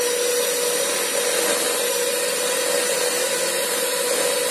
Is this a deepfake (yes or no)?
no